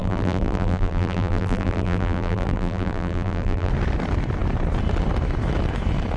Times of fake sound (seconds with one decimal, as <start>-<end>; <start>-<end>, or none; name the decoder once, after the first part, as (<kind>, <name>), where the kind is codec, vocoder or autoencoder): 0.0-3.7 (vocoder, BigVGAN v2)